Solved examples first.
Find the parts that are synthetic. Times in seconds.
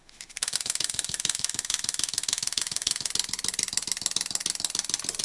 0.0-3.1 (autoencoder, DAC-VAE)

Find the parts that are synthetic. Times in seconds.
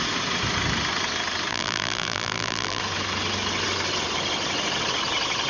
1.5-2.8 (vocoder, BigVGAN v2)